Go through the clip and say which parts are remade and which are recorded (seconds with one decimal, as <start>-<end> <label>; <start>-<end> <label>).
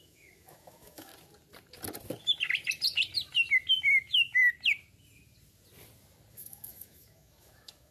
0.0-1.1 remade; 1.1-3.7 recorded; 3.7-4.4 remade; 4.4-6.3 recorded; 6.3-7.9 remade